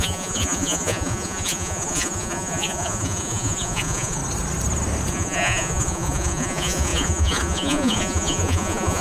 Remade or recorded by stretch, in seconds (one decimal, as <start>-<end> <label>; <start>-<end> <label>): 0.0-4.2 remade; 4.2-5.1 recorded; 5.1-9.0 remade

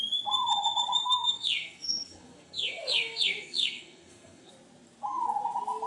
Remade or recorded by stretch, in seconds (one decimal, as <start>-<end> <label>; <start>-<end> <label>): 0.0-1.0 recorded; 1.0-4.5 remade; 4.5-5.9 recorded

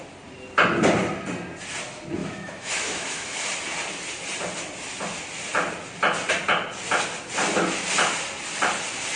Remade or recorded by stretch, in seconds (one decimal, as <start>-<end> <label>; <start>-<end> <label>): 0.0-2.2 recorded; 2.2-3.5 remade; 3.5-9.2 recorded

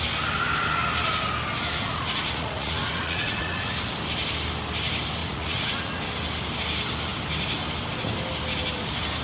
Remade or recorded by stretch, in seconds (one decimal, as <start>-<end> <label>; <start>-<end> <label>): 0.0-1.8 recorded; 1.8-3.7 remade; 3.7-5.2 recorded; 5.2-6.0 remade; 6.0-9.2 recorded

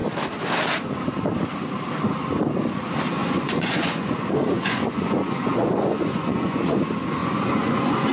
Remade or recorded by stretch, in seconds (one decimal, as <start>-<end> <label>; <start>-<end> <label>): 0.0-3.2 recorded; 3.2-6.8 remade; 6.8-7.2 recorded; 7.2-8.1 remade

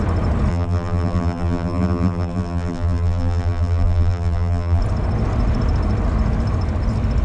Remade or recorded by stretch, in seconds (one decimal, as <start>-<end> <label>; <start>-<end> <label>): 0.0-0.5 recorded; 0.5-4.8 remade; 4.8-7.2 recorded

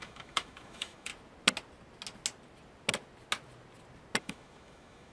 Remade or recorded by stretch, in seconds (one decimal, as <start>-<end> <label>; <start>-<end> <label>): 0.0-1.1 remade; 1.1-4.2 recorded; 4.2-5.1 remade

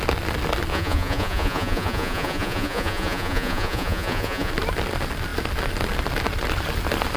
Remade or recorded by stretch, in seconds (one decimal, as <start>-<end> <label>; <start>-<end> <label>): 0.0-0.7 recorded; 0.7-4.5 remade; 4.5-7.2 recorded